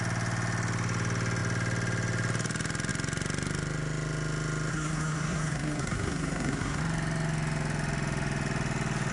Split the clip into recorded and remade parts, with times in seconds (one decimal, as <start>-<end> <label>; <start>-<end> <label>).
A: 0.0-4.7 recorded; 4.7-6.8 remade; 6.8-9.1 recorded